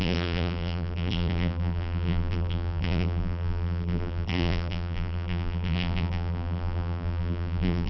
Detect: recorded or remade remade